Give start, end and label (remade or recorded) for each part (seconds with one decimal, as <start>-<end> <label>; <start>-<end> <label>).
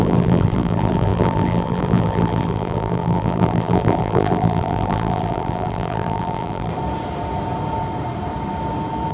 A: 0.0-6.7 remade; 6.7-9.1 recorded